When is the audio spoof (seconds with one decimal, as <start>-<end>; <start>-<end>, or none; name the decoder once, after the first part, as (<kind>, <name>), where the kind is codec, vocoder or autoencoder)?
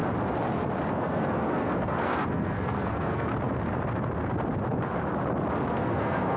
0.9-3.3 (codec, SNAC); 5.7-6.4